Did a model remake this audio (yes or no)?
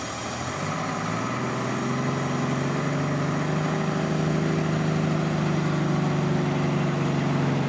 no